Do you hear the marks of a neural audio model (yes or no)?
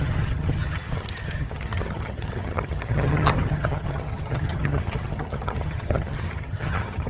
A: yes